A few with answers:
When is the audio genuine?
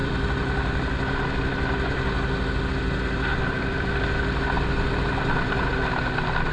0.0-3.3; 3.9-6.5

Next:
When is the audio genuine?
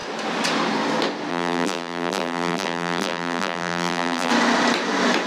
0.0-1.3; 4.3-5.3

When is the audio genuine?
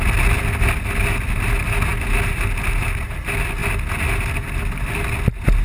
0.0-5.6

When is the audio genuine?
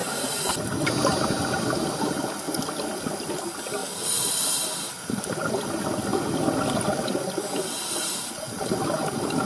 0.0-9.5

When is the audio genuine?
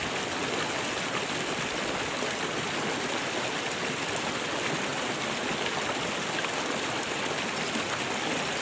0.0-8.6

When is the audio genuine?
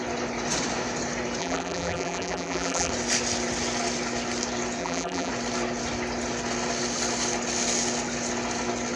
0.0-1.4; 2.9-4.8; 5.3-9.0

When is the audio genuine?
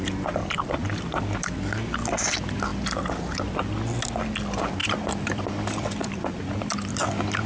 0.0-4.8; 6.2-7.5